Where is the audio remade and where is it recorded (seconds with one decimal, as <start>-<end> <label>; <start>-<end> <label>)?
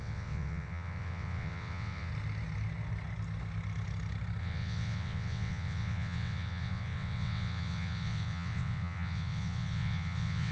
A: 0.0-2.1 remade; 2.1-4.4 recorded; 4.4-10.5 remade